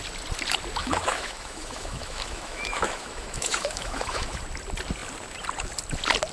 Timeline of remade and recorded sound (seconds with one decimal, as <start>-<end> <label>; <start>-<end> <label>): 0.0-0.8 recorded; 0.8-4.4 remade; 4.4-6.3 recorded